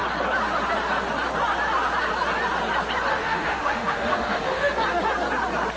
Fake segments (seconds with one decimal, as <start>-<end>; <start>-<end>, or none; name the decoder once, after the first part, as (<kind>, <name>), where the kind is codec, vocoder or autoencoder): 3.1-4.7 (autoencoder, DAC-VAE)